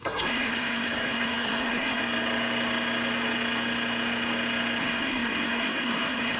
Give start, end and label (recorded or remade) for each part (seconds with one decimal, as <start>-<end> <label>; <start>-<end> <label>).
0.0-2.0 remade; 2.0-4.8 recorded; 4.8-6.4 remade